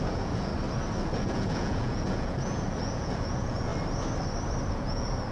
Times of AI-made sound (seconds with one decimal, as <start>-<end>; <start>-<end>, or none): 0.0-0.5; 1.1-3.7; 4.7-5.3